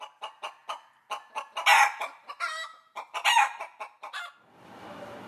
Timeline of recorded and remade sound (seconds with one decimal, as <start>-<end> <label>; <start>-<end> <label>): 0.0-5.3 recorded